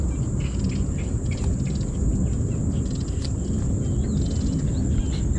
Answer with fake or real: real